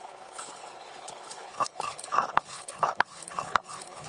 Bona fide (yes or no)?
no